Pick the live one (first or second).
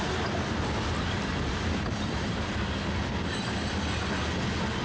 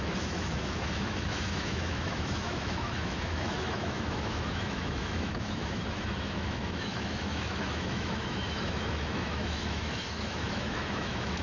first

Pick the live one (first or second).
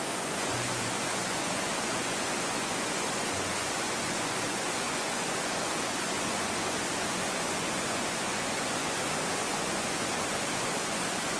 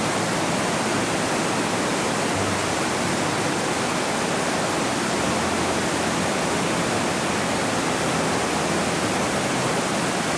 second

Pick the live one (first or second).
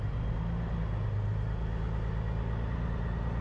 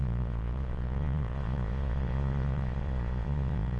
first